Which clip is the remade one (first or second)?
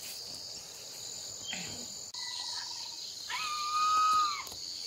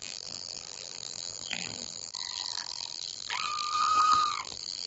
second